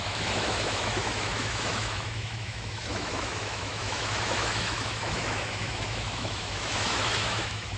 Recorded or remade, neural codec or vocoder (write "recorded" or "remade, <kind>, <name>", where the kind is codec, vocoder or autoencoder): remade, autoencoder, DAC-VAE